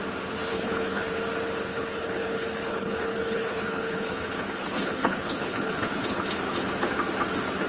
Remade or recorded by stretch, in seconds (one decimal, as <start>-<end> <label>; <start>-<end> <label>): 0.0-0.5 recorded; 0.5-1.1 remade; 1.1-1.6 recorded; 1.6-6.2 remade; 6.2-7.7 recorded